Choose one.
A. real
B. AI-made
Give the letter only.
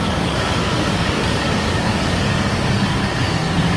B